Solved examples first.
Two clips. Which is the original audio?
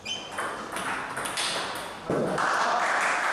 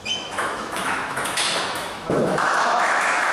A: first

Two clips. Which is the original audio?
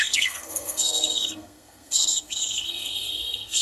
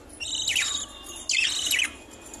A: second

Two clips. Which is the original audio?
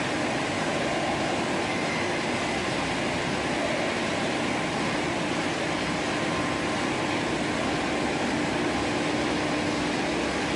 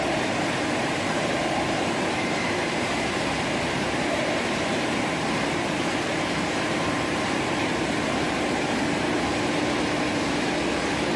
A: first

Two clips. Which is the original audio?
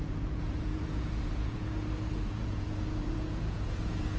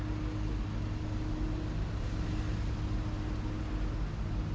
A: second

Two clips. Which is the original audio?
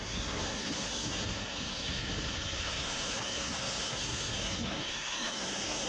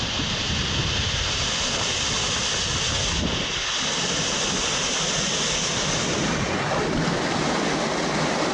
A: second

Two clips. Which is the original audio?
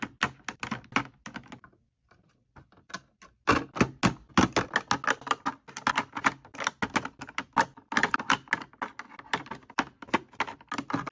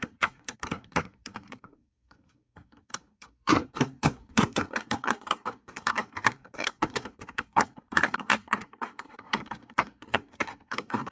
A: first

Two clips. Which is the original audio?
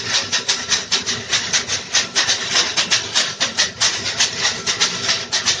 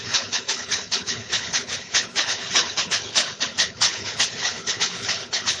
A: first